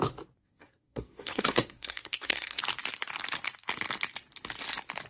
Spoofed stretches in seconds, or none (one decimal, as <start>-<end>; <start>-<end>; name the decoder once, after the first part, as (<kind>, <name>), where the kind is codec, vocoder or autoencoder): 0.4-2.6 (codec, SNAC)